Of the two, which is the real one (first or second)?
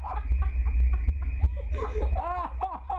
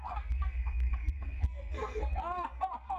first